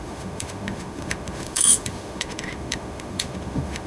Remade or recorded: remade